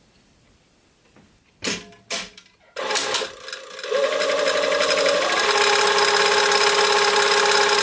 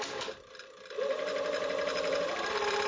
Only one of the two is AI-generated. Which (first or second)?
second